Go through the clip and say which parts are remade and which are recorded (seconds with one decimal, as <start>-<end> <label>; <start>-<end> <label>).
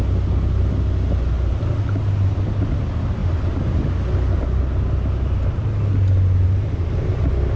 0.0-7.6 recorded